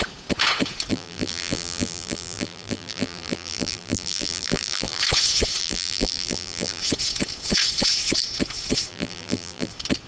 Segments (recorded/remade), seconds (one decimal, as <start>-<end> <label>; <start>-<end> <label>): 0.0-0.9 recorded; 0.9-5.0 remade; 5.0-5.6 recorded; 5.6-6.8 remade; 6.8-8.9 recorded; 8.9-9.7 remade; 9.7-10.1 recorded